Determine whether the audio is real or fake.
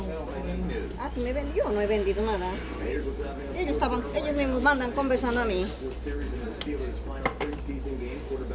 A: real